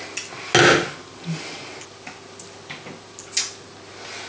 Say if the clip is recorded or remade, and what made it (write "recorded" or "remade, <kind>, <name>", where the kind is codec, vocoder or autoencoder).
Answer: recorded